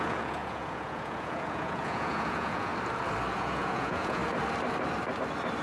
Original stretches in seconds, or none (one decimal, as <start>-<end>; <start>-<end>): 2.7-3.3; 4.2-5.6